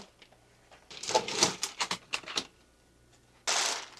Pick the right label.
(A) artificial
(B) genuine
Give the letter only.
B